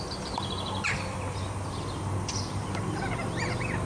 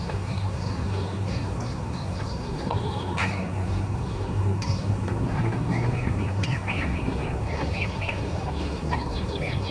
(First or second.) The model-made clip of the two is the second